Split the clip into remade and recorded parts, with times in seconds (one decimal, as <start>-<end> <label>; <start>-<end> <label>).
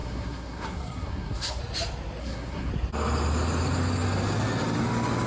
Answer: 0.0-1.6 remade; 1.6-2.2 recorded; 2.2-2.7 remade; 2.7-5.3 recorded